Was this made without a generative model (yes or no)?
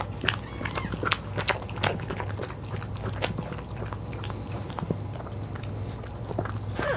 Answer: yes